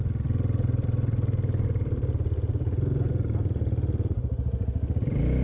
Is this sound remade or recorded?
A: remade